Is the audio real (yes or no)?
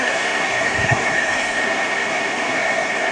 no